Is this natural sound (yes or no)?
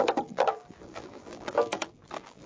no